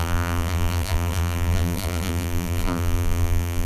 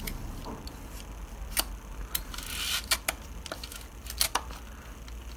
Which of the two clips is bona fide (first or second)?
second